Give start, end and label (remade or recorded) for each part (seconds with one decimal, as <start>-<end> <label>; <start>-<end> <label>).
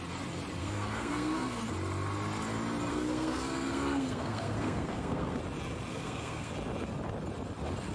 0.0-0.6 recorded; 0.6-1.6 remade; 1.6-2.9 recorded; 2.9-5.4 remade; 5.4-5.9 recorded; 5.9-6.5 remade; 6.5-7.9 recorded